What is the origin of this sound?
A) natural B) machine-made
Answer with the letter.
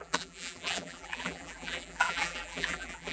B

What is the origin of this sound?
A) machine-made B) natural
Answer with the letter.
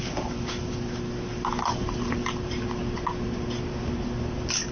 B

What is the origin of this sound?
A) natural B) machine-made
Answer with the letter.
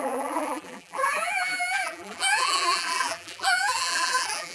B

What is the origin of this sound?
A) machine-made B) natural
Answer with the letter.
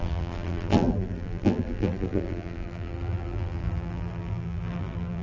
A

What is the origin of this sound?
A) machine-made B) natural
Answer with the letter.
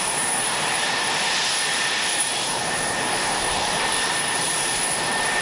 A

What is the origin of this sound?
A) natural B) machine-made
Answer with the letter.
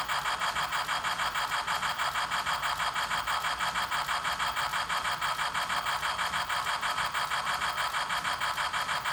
A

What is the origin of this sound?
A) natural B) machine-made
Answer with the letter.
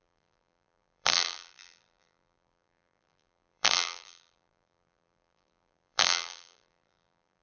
B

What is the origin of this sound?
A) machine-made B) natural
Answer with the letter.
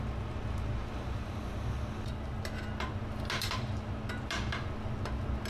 B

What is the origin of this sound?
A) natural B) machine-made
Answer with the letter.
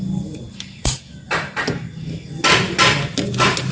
A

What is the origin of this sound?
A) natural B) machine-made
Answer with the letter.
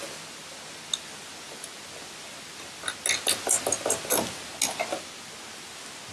A